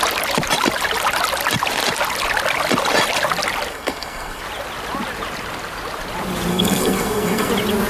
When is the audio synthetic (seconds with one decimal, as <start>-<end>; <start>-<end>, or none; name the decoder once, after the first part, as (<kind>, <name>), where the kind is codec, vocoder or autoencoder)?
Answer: 3.7-4.4 (codec, SNAC); 6.5-7.5